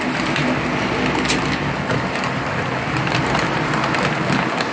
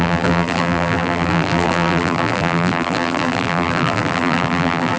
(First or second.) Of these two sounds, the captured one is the first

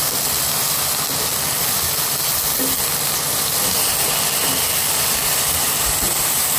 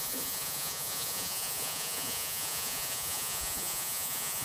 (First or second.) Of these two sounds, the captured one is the first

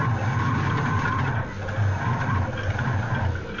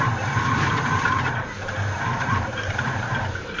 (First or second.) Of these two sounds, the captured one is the first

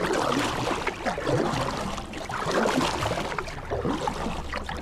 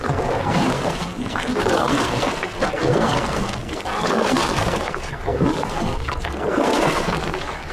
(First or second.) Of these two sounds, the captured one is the first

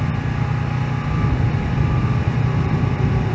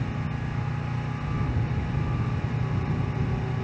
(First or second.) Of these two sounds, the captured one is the second